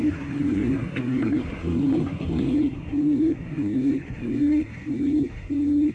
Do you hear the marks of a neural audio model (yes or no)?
yes